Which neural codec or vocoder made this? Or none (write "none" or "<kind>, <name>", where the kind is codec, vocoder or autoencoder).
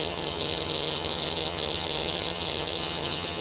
vocoder, HiFi-GAN